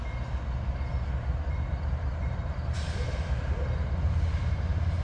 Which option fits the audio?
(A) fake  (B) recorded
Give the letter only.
B